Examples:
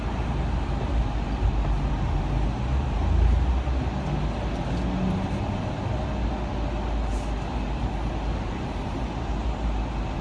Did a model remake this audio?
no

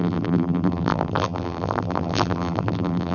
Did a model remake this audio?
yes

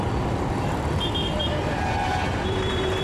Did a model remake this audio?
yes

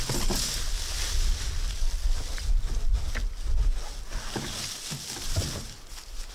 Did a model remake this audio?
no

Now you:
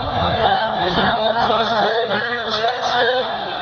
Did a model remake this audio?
yes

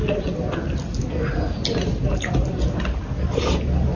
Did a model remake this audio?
no